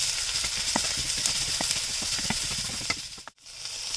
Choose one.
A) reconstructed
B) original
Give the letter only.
B